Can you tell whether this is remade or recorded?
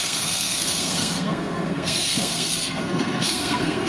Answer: remade